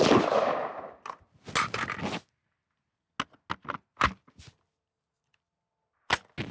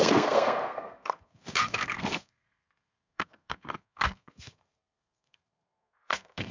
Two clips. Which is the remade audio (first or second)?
second